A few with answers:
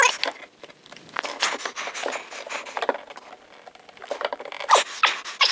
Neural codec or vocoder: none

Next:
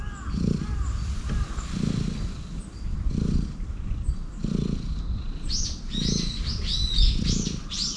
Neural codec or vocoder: none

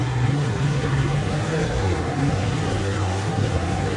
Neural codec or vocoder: codec, SNAC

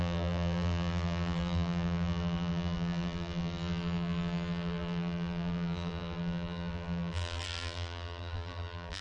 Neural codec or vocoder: vocoder, BigVGAN v2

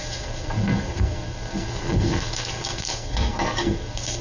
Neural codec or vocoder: codec, SNAC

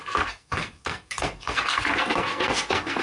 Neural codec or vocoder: codec, SNAC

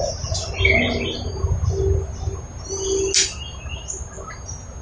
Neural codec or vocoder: none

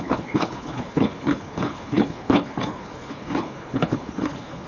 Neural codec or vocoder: codec, HILCodec